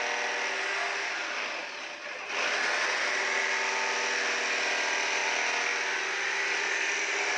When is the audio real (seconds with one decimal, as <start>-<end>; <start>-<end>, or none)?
0.0-7.4